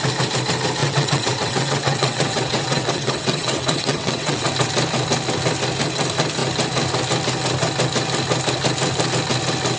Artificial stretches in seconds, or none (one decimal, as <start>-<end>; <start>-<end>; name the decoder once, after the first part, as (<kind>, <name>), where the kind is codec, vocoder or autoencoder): 0.8-4.5 (vocoder, WaveNeXt)